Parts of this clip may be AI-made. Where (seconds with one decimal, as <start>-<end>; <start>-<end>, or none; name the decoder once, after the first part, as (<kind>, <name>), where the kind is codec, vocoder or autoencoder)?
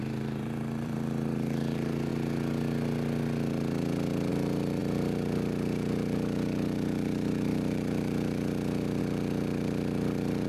0.0-2.1 (vocoder, BigVGAN v2); 4.3-10.5